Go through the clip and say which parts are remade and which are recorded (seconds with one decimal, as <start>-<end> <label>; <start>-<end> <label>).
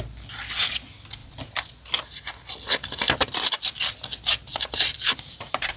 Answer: 0.0-4.3 recorded; 4.3-5.8 remade